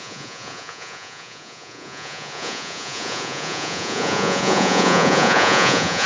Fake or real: fake